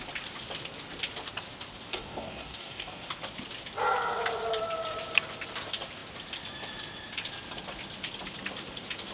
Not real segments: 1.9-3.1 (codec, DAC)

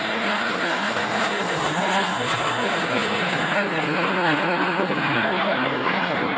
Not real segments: 0.0-6.4 (codec, SNAC)

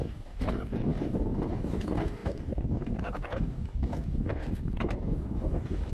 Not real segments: 0.0-5.9 (codec, DAC)

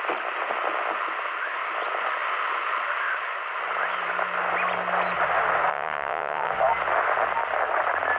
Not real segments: 5.7-6.5 (vocoder, WaveNeXt)

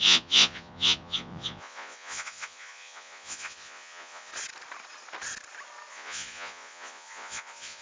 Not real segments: 0.0-4.3 (vocoder, Vocos); 5.9-7.8

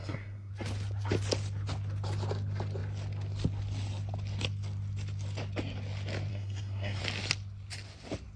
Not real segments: 0.0-0.5 (codec, SNAC); 6.3-7.0

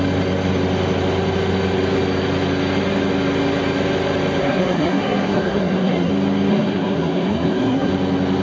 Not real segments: 4.4-6.1 (codec, SNAC); 6.5-7.9